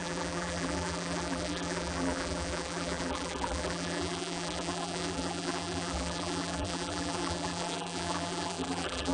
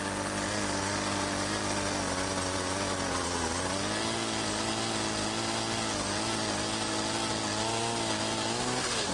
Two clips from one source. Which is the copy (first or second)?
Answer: first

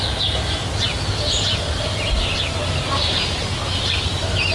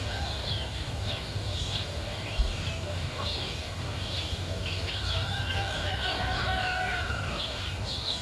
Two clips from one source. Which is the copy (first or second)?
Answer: second